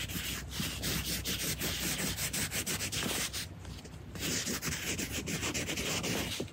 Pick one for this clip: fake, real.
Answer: real